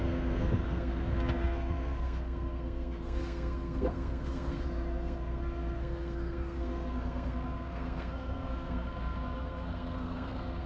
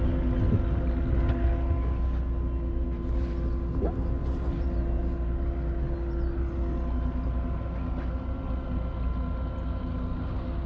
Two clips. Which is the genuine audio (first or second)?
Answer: second